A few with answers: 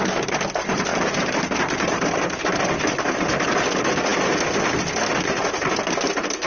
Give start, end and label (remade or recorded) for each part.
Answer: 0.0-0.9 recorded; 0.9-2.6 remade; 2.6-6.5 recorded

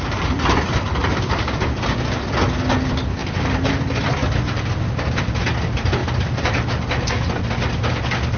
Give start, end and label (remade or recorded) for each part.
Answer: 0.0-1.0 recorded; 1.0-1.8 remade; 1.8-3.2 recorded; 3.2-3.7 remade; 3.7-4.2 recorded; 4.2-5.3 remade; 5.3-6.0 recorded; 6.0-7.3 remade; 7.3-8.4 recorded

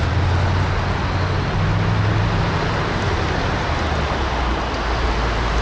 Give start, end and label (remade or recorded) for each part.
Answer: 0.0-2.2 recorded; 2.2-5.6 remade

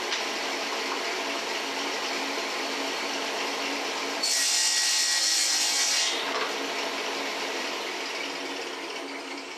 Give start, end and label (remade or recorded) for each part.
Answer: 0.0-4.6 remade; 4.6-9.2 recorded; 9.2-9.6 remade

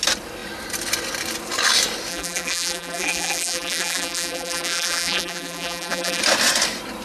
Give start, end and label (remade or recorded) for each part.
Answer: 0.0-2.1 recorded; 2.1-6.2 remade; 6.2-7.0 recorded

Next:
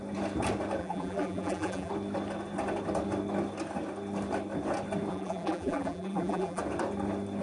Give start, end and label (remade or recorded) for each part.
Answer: 0.0-0.8 recorded; 0.8-1.9 remade; 1.9-5.1 recorded; 5.1-6.6 remade; 6.6-7.4 recorded

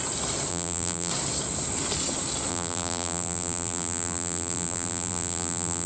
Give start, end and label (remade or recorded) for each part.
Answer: 0.0-0.5 recorded; 0.5-1.1 remade; 1.1-2.5 recorded; 2.5-5.9 remade

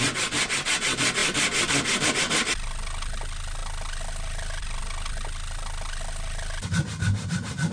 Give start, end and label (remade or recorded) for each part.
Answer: 0.0-7.7 recorded